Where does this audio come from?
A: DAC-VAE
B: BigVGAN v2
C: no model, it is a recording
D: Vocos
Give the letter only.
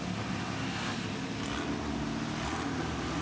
C